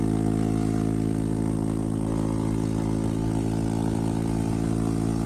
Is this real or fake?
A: real